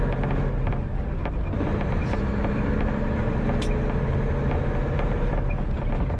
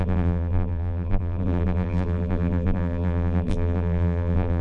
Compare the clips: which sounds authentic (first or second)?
first